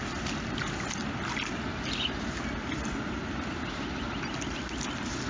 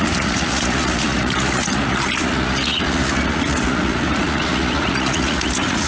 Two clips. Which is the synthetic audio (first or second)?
second